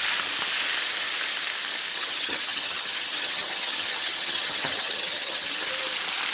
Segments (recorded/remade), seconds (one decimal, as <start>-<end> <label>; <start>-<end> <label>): 0.0-1.9 recorded; 1.9-5.7 remade; 5.7-6.3 recorded